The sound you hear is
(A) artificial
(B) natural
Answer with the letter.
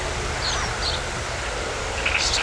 B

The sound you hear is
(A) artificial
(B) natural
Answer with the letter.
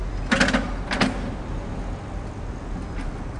B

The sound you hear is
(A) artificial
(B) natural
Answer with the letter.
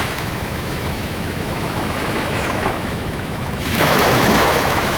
A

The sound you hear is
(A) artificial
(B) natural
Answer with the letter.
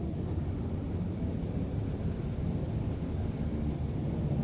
B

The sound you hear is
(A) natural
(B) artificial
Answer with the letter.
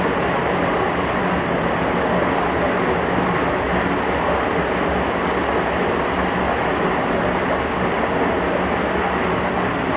A